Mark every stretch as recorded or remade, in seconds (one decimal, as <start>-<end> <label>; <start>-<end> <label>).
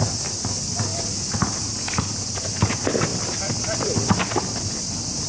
0.0-5.3 recorded